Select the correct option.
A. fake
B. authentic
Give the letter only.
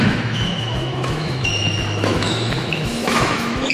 A